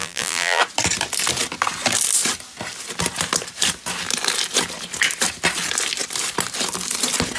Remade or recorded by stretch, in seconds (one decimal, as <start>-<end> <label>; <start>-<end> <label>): 0.0-0.6 remade; 0.6-7.4 recorded